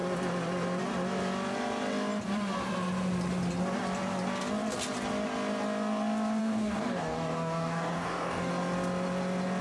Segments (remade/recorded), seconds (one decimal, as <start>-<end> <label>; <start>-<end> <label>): 0.0-6.4 recorded; 6.4-8.5 remade; 8.5-9.6 recorded